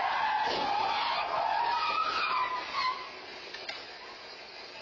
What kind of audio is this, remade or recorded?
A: recorded